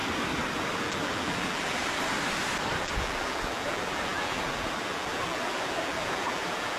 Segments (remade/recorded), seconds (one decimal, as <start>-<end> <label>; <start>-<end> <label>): 0.0-0.8 recorded; 0.8-1.8 remade; 1.8-2.8 recorded; 2.8-6.8 remade